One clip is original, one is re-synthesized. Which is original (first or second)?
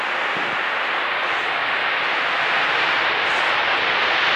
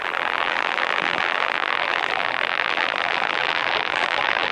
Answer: first